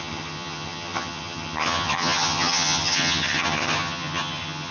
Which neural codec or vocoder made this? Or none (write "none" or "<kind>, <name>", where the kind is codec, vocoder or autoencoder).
vocoder, HiFi-GAN